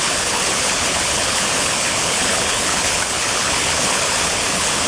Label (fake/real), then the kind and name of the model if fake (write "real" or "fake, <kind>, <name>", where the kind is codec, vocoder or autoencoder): fake, codec, HILCodec